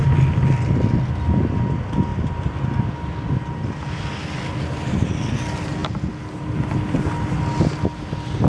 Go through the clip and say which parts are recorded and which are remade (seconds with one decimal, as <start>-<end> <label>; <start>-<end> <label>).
0.0-8.5 recorded